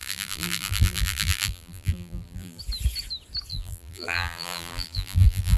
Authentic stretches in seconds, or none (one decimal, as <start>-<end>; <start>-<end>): 2.6-3.5

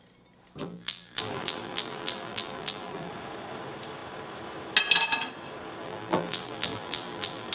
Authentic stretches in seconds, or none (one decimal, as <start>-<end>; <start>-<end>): 0.0-0.6; 3.1-5.8

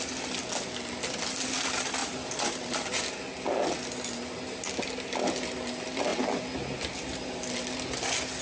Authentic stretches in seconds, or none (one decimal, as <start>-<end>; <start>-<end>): 0.0-2.0; 3.0-8.4

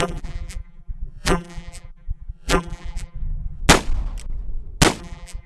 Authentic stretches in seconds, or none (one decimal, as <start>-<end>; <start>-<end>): 3.6-5.0

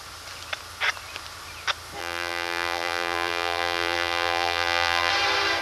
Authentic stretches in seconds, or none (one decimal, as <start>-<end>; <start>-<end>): 0.0-2.0; 5.1-5.6

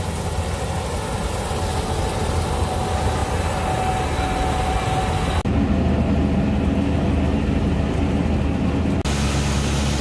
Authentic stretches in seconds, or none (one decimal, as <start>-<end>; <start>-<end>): 0.0-10.0